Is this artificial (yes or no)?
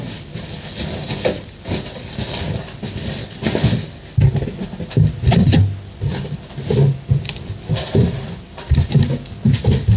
no